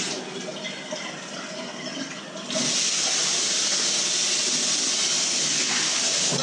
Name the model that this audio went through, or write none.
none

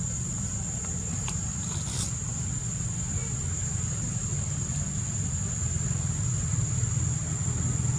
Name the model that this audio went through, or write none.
none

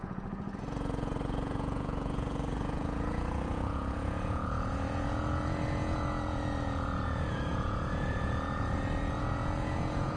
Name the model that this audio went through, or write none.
vocoder, Vocos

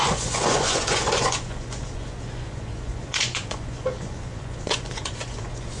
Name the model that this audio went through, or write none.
vocoder, Vocos